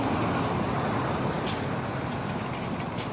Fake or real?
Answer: real